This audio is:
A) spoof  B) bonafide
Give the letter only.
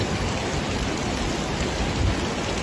B